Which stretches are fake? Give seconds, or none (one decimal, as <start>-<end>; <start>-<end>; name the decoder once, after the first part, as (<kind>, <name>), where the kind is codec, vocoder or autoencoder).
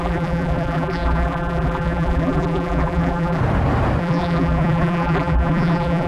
0.0-3.4 (vocoder, BigVGAN v2); 4.0-6.1